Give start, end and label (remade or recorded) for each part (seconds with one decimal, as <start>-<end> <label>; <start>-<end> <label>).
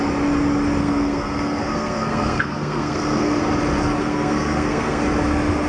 0.0-0.8 recorded; 0.8-3.4 remade; 3.4-4.0 recorded; 4.0-5.0 remade; 5.0-5.7 recorded